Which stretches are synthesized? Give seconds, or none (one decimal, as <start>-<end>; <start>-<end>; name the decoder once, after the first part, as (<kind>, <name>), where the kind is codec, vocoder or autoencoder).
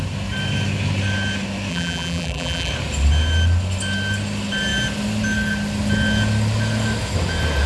1.7-2.7 (vocoder, BigVGAN v2)